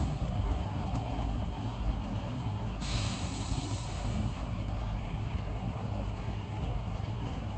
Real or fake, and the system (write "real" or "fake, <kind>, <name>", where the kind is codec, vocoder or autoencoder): fake, codec, SNAC